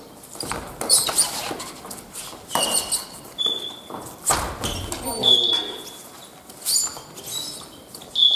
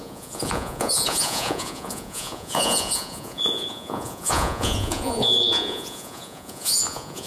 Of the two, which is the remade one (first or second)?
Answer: second